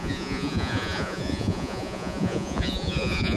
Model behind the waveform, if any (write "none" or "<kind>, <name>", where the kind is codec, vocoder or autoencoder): vocoder, Vocos